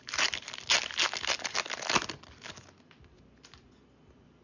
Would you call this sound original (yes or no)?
yes